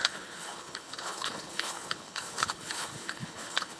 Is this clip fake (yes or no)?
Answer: yes